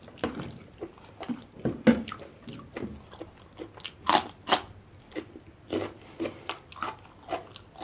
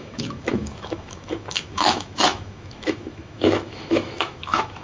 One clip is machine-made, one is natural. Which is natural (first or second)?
first